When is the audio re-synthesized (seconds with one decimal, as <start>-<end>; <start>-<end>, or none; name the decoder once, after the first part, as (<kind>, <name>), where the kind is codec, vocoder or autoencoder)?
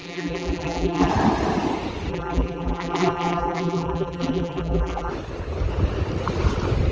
0.0-1.1 (vocoder, BigVGAN v2); 2.1-5.1